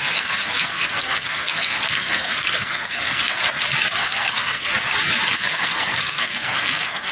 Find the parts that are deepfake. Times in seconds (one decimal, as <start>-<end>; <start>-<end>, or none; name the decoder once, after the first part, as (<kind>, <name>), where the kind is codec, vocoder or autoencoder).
0.0-3.4 (codec, SNAC); 4.0-4.7; 5.3-7.1